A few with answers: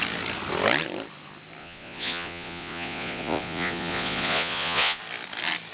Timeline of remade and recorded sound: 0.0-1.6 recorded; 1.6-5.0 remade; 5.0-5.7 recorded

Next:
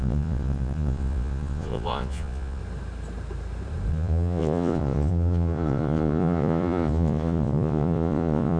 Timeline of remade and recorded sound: 0.0-2.6 remade; 2.6-3.9 recorded; 3.9-8.6 remade